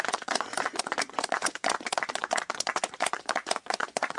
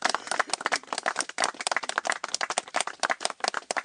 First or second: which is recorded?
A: second